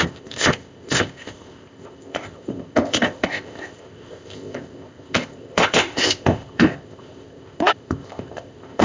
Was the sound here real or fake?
fake